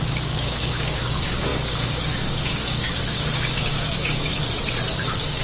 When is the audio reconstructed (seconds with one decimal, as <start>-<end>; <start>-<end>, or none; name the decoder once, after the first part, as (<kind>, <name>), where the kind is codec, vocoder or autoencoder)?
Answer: 0.0-4.3 (codec, DAC); 4.9-5.4